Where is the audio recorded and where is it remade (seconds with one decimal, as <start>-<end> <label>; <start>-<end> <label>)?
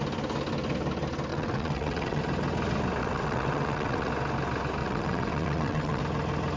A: 0.0-1.3 recorded; 1.3-2.2 remade; 2.2-3.0 recorded; 3.0-4.1 remade; 4.1-4.8 recorded; 4.8-6.0 remade; 6.0-6.6 recorded